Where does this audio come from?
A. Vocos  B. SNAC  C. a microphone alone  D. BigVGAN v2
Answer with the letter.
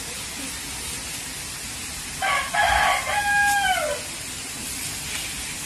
C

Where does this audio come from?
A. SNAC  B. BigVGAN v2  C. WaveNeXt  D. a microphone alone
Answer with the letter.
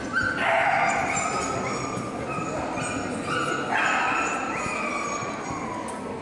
D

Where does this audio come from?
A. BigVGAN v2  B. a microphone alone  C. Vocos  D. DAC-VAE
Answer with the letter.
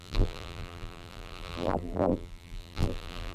A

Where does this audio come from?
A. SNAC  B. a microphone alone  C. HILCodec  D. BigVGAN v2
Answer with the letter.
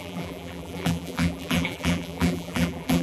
D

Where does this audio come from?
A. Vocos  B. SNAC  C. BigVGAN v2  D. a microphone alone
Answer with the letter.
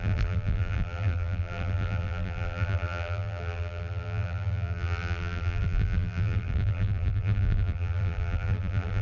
C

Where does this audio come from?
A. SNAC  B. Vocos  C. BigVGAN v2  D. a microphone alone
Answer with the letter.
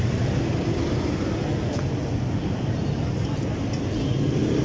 D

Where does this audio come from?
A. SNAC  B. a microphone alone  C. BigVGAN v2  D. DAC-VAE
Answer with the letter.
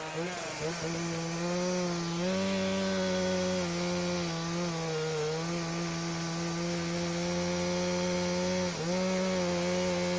B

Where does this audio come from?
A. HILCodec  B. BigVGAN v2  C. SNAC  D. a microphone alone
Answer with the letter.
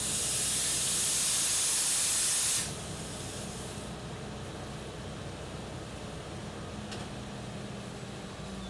D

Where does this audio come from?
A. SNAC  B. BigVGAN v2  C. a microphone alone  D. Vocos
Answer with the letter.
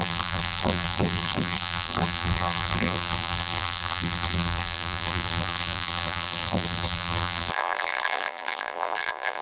B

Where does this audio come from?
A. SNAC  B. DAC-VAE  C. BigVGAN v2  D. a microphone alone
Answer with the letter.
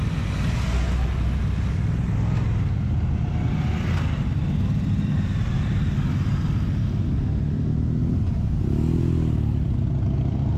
D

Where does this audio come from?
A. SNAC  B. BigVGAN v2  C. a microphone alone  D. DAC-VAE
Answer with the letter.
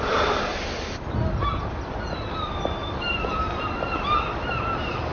B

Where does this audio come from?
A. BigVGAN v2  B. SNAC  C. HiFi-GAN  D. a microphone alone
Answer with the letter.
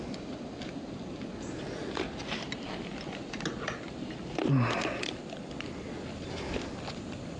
D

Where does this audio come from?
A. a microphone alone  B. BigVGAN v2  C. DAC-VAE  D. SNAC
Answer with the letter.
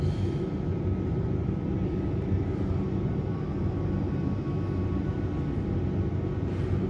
A